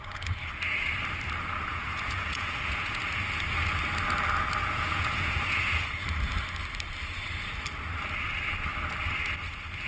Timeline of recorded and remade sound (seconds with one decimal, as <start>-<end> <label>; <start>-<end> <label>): 0.0-1.7 recorded; 1.7-3.0 remade; 3.0-4.6 recorded; 4.6-6.0 remade; 6.0-9.9 recorded